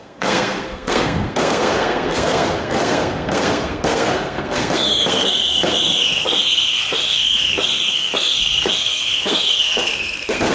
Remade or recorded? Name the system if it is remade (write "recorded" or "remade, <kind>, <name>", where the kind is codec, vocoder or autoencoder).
remade, codec, SNAC